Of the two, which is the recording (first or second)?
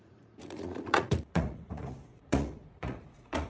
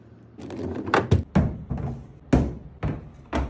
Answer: second